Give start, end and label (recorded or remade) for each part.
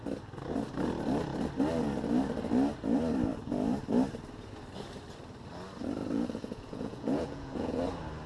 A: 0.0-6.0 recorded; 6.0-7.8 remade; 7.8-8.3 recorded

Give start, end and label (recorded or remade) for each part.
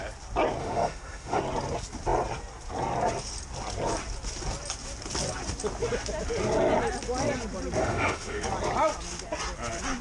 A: 0.0-0.6 recorded; 0.6-1.4 remade; 1.4-7.8 recorded; 7.8-8.4 remade; 8.4-10.0 recorded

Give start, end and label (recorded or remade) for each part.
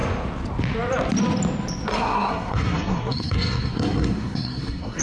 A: 0.0-1.9 recorded; 1.9-5.0 remade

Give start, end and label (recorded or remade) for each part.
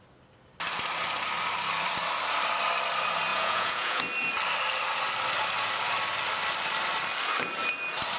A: 0.0-3.3 recorded; 3.3-4.0 remade; 4.0-8.2 recorded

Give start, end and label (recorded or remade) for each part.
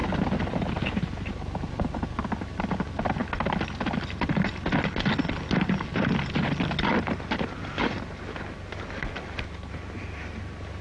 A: 0.0-2.6 remade; 2.6-10.8 recorded